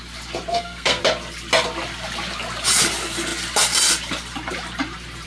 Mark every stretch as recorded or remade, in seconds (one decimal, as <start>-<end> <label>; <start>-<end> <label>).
0.0-0.5 recorded; 0.5-1.0 remade; 1.0-5.3 recorded